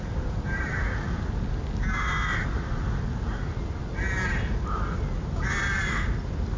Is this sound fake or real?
real